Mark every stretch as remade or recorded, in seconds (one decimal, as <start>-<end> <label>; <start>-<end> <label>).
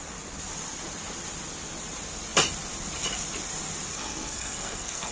0.0-3.9 recorded; 3.9-5.1 remade